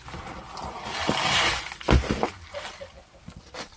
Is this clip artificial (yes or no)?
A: no